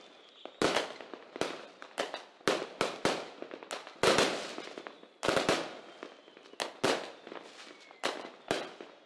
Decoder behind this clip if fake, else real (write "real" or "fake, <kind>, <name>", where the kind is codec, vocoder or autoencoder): real